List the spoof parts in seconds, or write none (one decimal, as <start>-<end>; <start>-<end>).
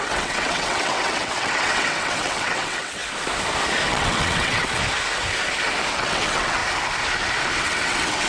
0.0-3.0; 3.9-4.8; 5.9-6.6; 7.6-8.3